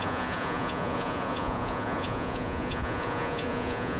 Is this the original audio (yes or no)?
no